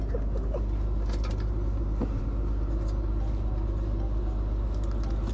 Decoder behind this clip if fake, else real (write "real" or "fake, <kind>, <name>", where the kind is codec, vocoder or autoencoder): real